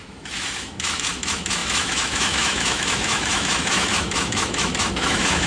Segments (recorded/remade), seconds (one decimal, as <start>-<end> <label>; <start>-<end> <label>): 0.0-5.5 remade